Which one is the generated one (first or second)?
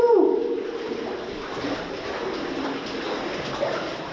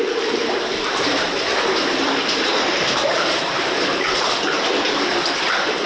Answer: second